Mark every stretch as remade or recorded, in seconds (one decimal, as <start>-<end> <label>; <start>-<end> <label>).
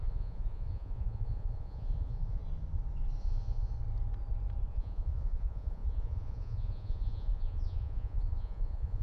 0.0-2.4 remade; 2.4-3.2 recorded; 3.2-3.7 remade; 3.7-4.7 recorded; 4.7-9.0 remade